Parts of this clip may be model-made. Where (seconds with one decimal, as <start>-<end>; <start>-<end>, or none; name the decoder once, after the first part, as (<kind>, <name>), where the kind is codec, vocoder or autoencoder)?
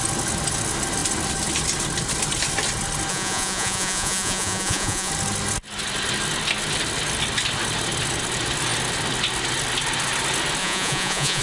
3.1-5.1 (vocoder, Vocos); 10.6-11.4